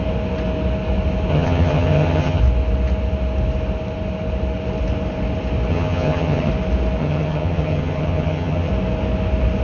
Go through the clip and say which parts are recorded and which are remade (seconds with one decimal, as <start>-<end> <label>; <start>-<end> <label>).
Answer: 0.0-1.3 recorded; 1.3-2.4 remade; 2.4-5.7 recorded; 5.7-6.5 remade; 6.5-7.0 recorded; 7.0-8.7 remade; 8.7-9.6 recorded